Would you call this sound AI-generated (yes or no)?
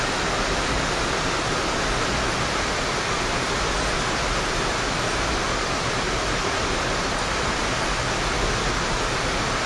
no